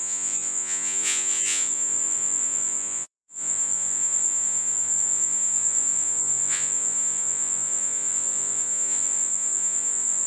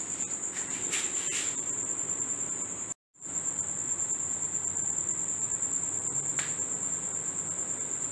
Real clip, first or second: second